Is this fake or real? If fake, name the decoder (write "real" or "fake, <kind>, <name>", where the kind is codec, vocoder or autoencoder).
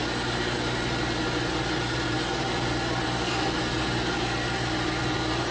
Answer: real